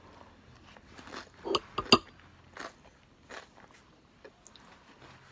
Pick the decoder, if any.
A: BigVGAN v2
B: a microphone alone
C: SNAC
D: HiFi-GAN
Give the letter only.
B